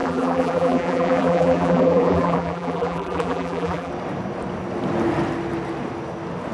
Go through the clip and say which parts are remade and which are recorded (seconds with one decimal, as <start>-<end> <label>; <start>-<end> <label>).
0.0-3.9 remade; 3.9-6.5 recorded